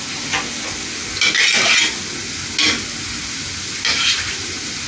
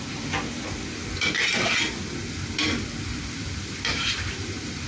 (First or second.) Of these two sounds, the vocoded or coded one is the second